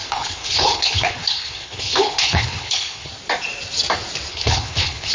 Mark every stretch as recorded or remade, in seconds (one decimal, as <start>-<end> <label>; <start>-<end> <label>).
0.0-3.1 remade; 3.1-4.3 recorded; 4.3-5.1 remade